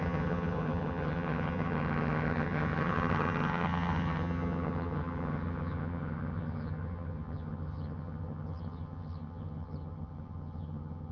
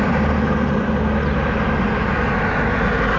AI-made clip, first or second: first